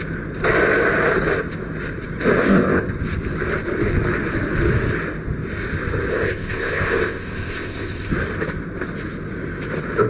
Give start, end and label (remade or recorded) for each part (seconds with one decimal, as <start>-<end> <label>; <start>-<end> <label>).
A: 0.0-2.4 recorded; 2.4-2.9 remade; 2.9-6.1 recorded; 6.1-8.1 remade; 8.1-10.1 recorded